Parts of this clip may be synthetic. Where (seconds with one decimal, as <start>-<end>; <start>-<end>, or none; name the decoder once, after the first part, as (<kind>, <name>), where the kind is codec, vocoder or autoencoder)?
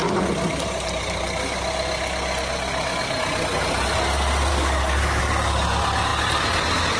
4.5-5.2 (codec, DAC)